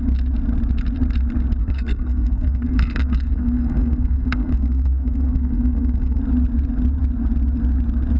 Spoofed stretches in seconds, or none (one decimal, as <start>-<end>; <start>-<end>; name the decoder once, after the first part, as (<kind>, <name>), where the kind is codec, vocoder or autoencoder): 1.6-6.2 (codec, SNAC)

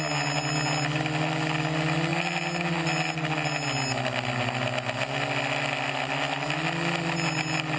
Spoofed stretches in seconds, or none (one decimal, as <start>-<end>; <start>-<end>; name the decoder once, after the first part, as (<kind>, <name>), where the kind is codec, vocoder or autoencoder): none

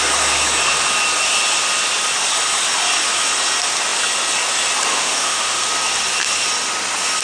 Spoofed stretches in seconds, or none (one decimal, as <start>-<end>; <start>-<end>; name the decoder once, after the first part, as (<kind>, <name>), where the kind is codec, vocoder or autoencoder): 4.9-5.6 (autoencoder, DAC-VAE)

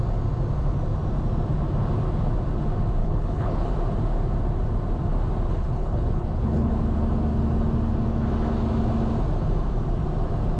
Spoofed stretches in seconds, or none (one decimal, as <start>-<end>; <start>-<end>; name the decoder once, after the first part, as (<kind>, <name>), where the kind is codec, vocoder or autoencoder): 3.0-3.7 (codec, HILCodec); 5.5-6.7

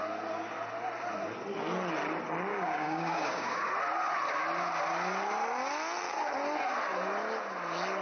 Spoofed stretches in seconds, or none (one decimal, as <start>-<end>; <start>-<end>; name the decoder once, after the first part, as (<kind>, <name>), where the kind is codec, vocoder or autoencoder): 2.5-3.7 (codec, DAC)